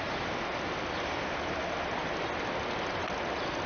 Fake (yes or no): no